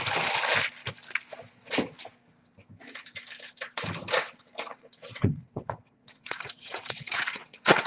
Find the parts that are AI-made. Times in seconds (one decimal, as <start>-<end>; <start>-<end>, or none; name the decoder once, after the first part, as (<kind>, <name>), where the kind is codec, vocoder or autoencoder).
4.7-7.9 (vocoder, WaveNeXt)